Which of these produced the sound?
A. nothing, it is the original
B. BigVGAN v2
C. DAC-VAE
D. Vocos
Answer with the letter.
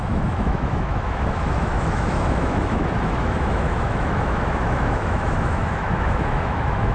C